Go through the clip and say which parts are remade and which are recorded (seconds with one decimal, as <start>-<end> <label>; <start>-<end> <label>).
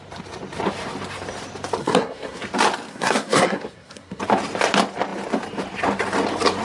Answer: 0.0-1.8 recorded; 1.8-2.4 remade; 2.4-2.9 recorded; 2.9-4.2 remade; 4.2-6.6 recorded